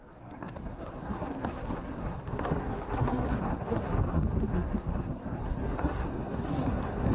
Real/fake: fake